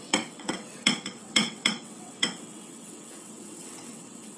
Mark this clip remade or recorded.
remade